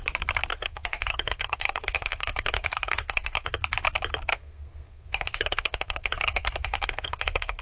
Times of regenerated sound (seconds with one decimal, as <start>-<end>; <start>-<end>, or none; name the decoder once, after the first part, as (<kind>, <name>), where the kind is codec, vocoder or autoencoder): 0.5-3.5 (codec, SNAC); 4.3-7.6